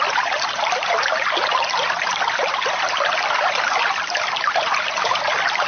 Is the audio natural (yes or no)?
yes